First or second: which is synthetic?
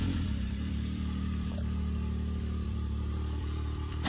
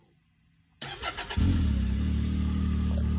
first